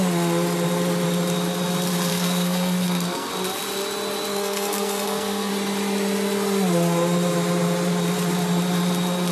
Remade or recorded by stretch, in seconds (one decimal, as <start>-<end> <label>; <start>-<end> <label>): 0.0-2.1 recorded; 2.1-3.3 remade; 3.3-4.3 recorded; 4.3-5.5 remade; 5.5-9.3 recorded